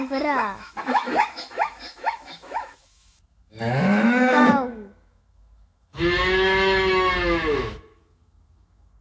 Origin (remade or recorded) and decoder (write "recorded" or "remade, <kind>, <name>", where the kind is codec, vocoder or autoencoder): remade, autoencoder, DAC-VAE